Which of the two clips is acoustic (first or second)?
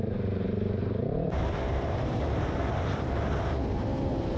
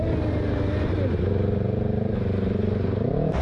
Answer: second